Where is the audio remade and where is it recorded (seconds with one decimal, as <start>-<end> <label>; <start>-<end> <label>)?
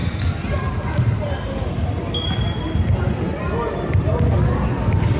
0.0-5.2 recorded